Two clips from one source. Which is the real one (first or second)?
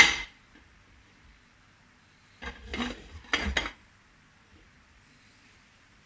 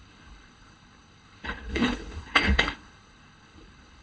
first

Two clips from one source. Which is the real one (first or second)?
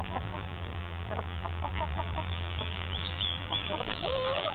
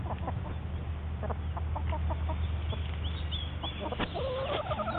second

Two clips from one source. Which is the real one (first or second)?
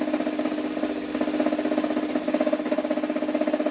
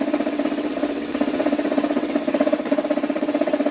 first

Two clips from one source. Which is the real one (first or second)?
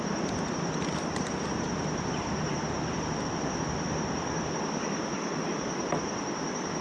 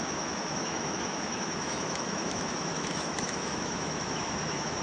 first